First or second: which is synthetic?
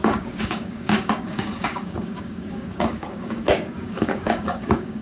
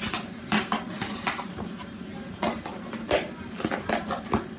first